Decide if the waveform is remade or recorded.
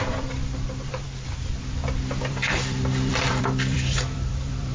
remade